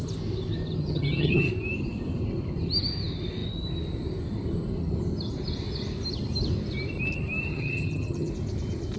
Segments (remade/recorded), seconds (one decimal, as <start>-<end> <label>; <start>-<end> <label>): 0.0-0.8 recorded; 0.8-1.5 remade; 1.5-7.5 recorded; 7.5-8.3 remade; 8.3-9.0 recorded